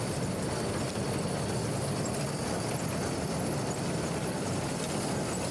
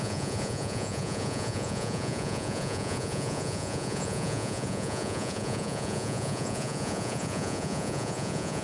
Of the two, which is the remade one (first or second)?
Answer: second